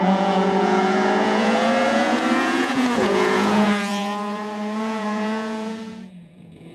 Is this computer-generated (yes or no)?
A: yes